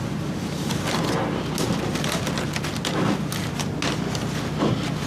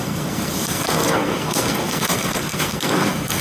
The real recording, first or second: first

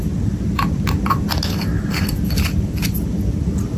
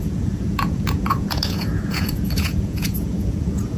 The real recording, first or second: first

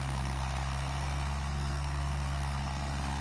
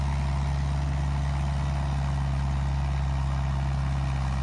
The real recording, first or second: second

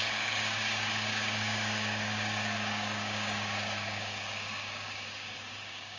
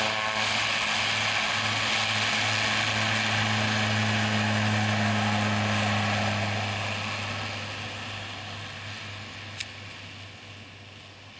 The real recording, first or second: second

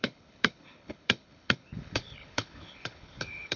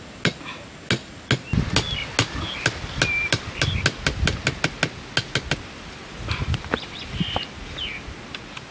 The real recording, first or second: second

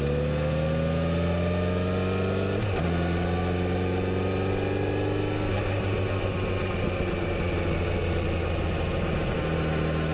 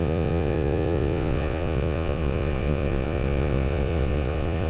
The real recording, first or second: first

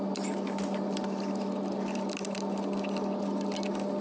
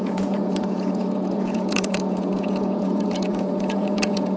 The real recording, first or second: first